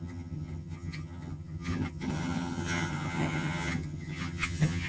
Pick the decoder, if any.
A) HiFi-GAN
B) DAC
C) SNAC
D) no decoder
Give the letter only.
A